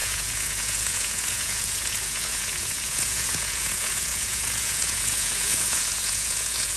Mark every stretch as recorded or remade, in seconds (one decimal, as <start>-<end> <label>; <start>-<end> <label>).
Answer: 0.0-6.8 remade